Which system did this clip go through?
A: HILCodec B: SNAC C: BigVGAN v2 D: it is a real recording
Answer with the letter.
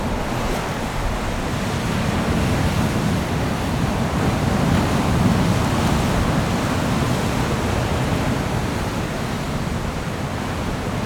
D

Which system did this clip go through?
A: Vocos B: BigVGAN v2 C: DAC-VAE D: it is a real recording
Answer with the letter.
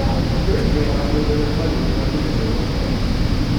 D